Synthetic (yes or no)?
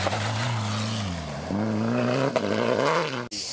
no